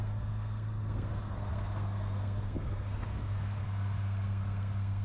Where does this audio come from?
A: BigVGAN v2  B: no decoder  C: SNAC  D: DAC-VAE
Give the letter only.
C